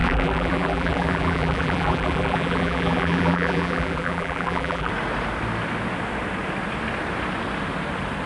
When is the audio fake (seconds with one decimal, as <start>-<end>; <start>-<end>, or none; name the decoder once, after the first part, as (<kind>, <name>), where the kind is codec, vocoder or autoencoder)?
0.0-4.9 (vocoder, BigVGAN v2)